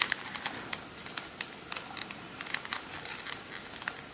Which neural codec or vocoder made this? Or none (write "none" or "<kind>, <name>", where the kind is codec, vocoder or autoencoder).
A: none